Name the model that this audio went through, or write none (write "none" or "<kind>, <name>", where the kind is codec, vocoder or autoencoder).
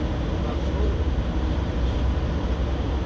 none